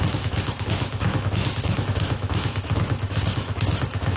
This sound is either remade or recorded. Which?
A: remade